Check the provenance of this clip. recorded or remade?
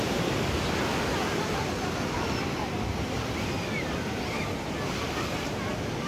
recorded